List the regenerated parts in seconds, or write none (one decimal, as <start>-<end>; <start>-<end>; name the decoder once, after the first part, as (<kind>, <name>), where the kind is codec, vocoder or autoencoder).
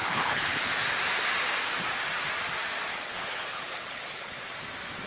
0.0-0.7 (codec, HILCodec); 2.9-4.5